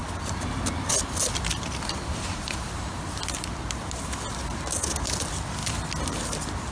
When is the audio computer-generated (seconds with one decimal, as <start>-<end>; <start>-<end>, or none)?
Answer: 0.0-2.8